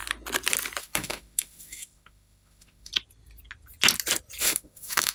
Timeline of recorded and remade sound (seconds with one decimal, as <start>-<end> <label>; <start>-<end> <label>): 0.0-0.8 recorded; 0.8-2.9 remade; 2.9-4.4 recorded; 4.4-5.1 remade